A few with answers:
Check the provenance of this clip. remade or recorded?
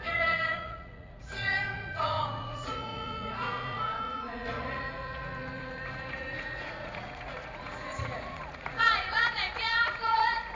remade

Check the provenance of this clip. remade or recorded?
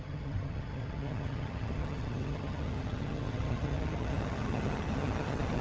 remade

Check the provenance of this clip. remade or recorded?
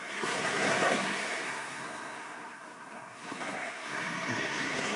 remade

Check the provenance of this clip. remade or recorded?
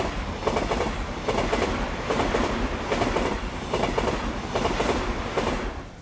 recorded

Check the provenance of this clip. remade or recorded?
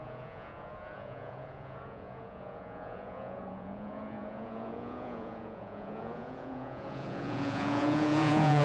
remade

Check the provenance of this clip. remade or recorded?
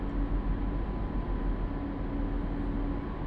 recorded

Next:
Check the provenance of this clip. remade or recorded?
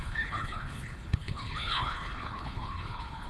remade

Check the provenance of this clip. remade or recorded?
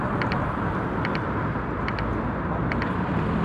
recorded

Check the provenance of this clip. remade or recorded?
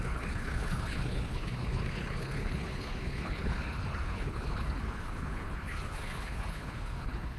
remade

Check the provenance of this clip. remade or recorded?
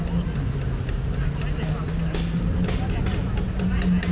recorded